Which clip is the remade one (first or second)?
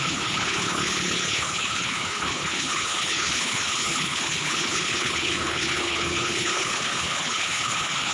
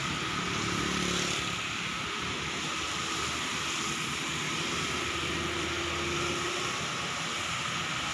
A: first